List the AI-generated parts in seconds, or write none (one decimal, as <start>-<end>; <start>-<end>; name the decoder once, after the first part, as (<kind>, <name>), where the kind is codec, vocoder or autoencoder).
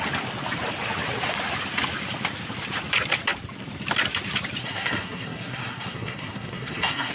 4.6-7.1 (codec, SNAC)